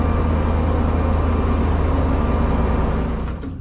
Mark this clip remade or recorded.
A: recorded